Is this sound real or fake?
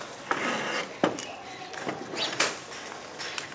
real